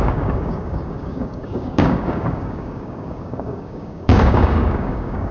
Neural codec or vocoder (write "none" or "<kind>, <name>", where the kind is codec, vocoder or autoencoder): codec, DAC